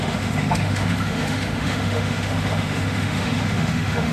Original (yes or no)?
no